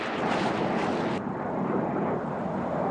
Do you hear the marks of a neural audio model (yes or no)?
yes